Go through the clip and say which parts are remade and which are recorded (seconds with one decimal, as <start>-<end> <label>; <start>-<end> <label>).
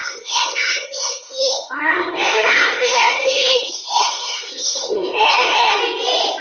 0.0-5.8 remade; 5.8-6.4 recorded